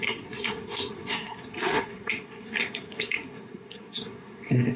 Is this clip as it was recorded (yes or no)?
no